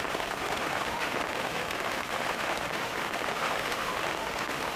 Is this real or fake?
fake